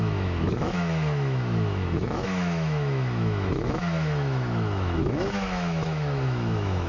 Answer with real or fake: fake